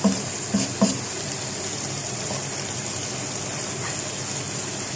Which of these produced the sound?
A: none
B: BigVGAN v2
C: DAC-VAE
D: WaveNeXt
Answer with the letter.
A